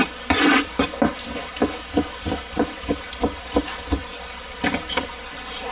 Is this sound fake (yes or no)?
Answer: no